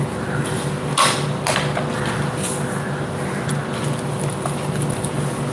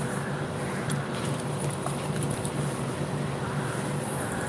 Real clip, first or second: first